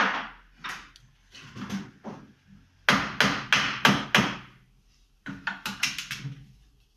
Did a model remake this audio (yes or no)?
no